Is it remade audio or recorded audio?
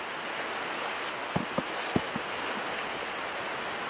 recorded